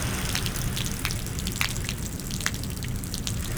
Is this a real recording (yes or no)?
yes